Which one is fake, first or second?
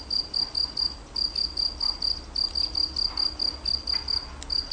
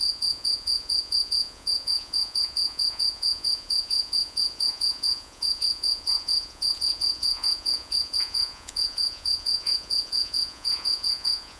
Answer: second